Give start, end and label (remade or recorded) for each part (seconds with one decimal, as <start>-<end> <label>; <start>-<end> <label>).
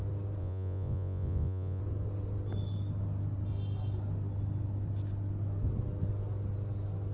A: 0.0-0.4 recorded; 0.4-1.8 remade; 1.8-7.1 recorded